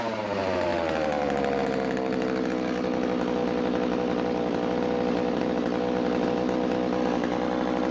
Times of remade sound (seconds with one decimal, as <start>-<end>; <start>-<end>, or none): none